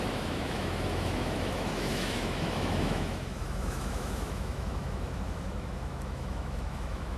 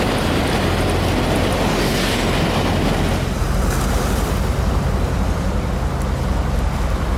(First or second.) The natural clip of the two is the second